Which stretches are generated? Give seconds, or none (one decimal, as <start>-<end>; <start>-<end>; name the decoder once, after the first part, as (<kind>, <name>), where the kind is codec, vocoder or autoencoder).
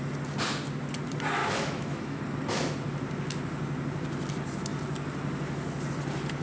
1.4-2.2 (autoencoder, DAC-VAE)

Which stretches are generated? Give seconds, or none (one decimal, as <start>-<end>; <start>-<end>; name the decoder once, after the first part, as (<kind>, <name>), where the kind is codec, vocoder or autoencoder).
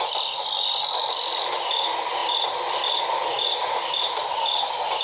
none